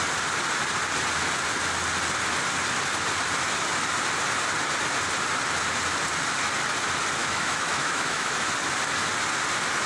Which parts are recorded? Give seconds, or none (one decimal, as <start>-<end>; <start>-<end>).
0.0-7.2; 8.5-9.9